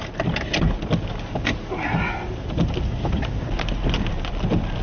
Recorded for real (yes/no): yes